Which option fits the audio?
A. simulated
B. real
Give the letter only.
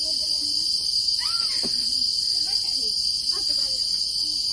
B